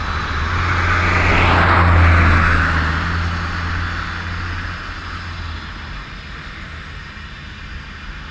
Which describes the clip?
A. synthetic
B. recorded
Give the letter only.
B